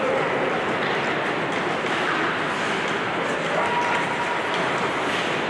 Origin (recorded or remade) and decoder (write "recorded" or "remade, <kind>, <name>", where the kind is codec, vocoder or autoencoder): recorded